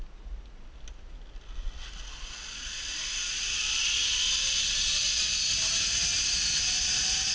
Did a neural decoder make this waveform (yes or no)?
no